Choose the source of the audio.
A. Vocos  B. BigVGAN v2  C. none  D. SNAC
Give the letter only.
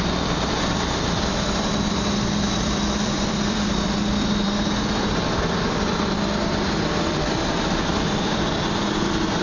B